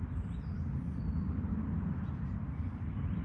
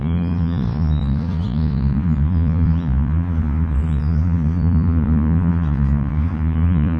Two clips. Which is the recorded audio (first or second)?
first